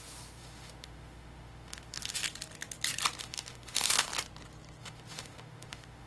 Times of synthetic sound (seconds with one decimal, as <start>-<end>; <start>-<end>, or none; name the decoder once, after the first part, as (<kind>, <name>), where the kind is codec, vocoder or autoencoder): 0.0-2.2 (autoencoder, DAC-VAE); 3.2-4.1; 4.8-6.1